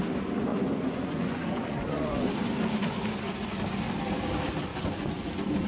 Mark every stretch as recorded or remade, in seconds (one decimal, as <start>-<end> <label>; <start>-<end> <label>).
0.0-0.5 recorded; 0.5-2.3 remade; 2.3-4.7 recorded; 4.7-5.3 remade; 5.3-5.7 recorded